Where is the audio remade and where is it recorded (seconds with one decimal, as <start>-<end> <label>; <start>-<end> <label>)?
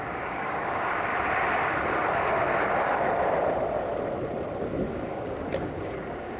0.0-1.1 remade; 1.1-4.9 recorded; 4.9-6.4 remade